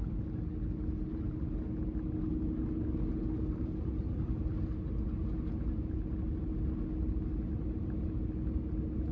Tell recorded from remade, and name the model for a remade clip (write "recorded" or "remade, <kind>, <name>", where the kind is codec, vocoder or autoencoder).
recorded